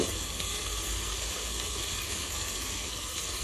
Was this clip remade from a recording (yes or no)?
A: yes